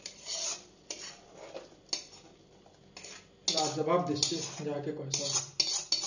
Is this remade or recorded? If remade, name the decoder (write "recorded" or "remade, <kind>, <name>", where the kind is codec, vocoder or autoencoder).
recorded